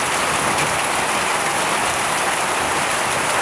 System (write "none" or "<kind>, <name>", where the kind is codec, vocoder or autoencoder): vocoder, BigVGAN v2